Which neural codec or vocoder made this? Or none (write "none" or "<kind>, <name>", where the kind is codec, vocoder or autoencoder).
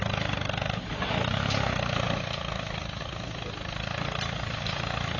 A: none